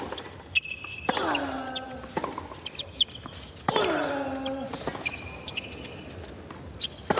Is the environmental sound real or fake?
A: real